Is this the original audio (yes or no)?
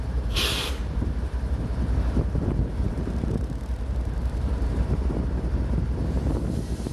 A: no